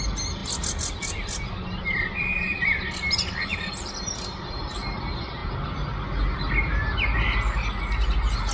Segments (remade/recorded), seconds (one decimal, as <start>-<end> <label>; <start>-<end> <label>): 0.0-8.5 recorded